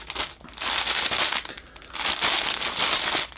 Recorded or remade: recorded